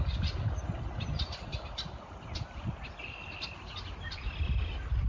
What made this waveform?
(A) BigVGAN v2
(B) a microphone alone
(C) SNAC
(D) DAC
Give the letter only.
B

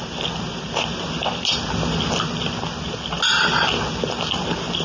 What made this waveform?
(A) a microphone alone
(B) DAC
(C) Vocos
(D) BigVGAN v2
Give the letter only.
A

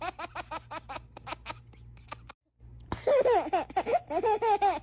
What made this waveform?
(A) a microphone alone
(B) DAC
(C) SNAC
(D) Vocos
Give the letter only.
A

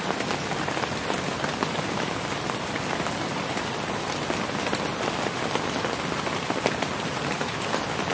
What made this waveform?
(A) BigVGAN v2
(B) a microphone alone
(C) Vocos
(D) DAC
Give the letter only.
B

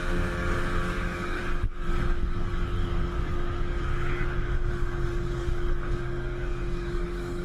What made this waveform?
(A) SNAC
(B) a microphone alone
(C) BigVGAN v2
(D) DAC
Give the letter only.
D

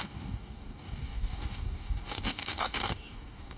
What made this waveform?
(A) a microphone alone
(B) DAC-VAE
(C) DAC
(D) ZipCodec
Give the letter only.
C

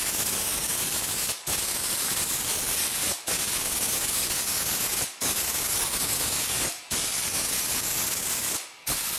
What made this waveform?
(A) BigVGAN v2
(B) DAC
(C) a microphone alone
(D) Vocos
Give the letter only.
B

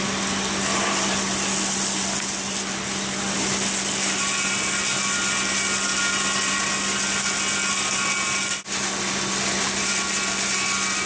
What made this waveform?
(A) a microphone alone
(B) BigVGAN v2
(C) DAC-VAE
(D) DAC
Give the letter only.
A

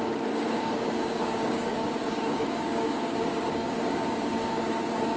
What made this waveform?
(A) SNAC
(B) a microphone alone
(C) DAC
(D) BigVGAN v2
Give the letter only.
C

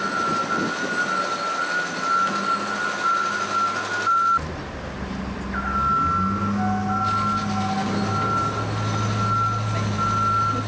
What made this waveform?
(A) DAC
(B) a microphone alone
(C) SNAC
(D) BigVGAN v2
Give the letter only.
B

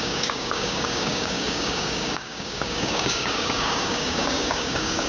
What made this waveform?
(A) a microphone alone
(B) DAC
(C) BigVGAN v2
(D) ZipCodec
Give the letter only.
B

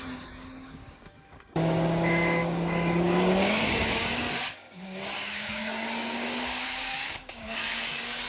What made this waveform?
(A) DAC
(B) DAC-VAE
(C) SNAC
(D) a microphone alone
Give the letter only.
A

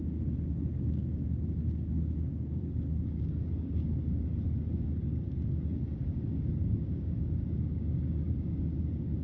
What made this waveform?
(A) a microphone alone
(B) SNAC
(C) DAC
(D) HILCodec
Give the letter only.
C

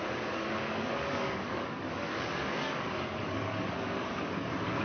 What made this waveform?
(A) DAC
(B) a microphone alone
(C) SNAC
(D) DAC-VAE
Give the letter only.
A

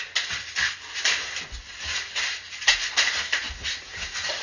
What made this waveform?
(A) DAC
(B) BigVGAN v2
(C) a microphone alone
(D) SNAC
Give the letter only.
C